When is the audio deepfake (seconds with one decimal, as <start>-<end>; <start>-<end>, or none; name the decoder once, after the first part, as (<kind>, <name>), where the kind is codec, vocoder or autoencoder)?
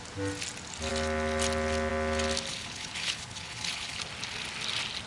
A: 2.5-4.0 (codec, HILCodec)